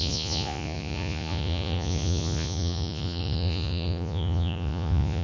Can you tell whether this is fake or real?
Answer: fake